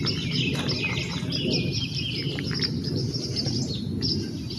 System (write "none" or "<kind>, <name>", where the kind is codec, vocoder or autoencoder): none